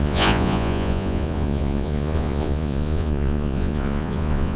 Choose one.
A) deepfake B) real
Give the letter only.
A